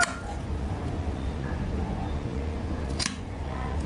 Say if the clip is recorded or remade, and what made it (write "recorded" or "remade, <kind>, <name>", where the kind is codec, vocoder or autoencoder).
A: remade, vocoder, Vocos